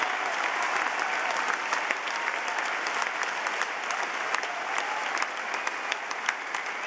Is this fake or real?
real